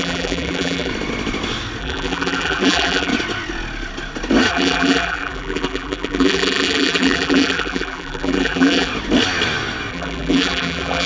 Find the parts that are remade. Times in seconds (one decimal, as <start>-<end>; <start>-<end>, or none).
0.0-0.9; 1.8-3.1; 4.5-8.9; 9.9-11.1